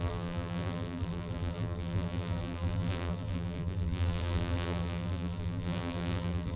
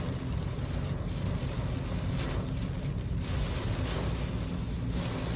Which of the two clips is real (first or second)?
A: second